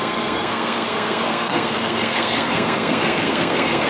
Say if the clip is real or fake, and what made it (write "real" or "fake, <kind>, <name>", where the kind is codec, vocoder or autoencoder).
fake, codec, SNAC